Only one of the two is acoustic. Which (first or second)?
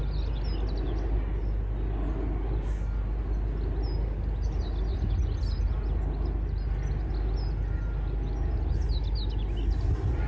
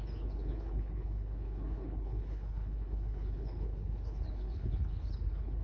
first